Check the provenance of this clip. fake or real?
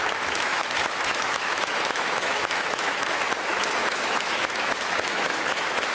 fake